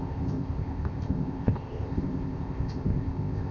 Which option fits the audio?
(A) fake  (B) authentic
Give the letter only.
A